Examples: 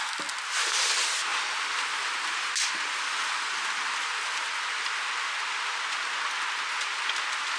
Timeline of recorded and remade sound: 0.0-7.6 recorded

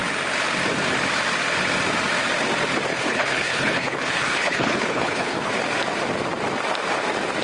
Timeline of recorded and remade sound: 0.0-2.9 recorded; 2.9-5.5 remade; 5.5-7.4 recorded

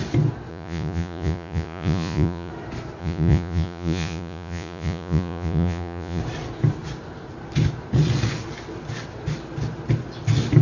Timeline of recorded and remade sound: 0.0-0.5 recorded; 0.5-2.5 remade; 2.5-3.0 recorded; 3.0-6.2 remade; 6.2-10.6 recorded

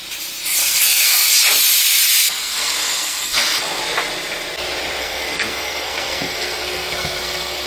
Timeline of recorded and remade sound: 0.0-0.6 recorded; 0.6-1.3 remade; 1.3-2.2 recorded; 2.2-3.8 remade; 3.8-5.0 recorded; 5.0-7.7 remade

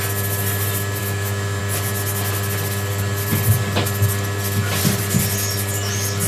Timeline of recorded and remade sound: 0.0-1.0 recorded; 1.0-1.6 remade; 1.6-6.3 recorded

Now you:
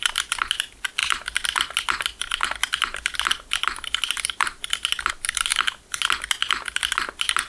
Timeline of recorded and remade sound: 0.0-7.5 recorded

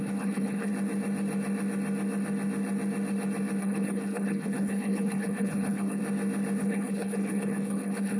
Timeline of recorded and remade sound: 0.0-0.7 remade; 0.7-3.6 recorded; 3.6-6.0 remade; 6.0-6.6 recorded; 6.6-8.2 remade

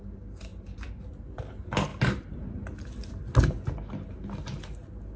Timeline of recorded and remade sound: 0.0-5.2 recorded